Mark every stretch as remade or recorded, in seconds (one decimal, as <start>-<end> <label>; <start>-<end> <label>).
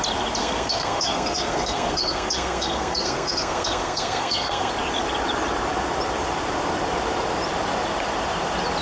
0.0-0.4 recorded; 0.4-4.7 remade; 4.7-8.8 recorded